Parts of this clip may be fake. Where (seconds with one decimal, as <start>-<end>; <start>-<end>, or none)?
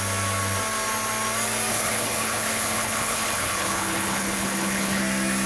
1.7-5.0